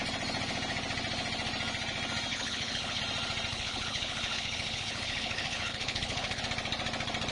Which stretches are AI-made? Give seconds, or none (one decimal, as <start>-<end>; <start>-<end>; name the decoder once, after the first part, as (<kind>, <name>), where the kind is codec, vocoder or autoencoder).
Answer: 2.3-3.0 (codec, HILCodec); 3.5-6.4